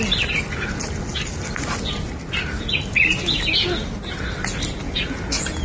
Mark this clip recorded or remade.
recorded